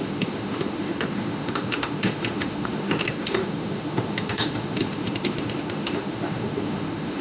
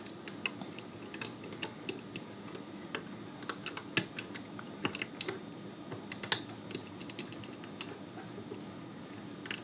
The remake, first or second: first